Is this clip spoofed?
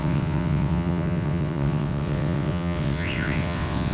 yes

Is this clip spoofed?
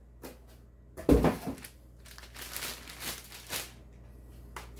no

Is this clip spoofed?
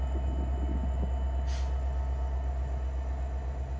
no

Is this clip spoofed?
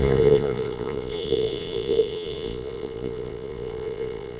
yes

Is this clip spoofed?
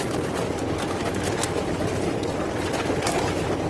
no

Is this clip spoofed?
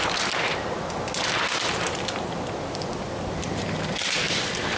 no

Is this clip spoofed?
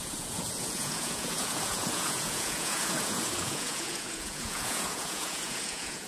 yes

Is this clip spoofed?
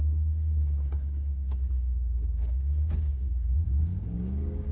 yes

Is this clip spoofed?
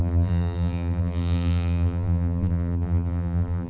yes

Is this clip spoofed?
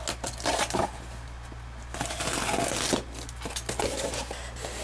no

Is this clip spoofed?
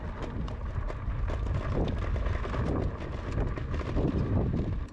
no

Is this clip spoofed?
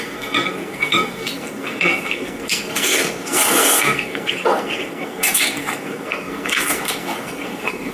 yes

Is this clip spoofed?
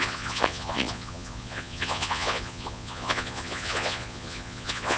yes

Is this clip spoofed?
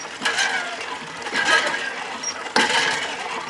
no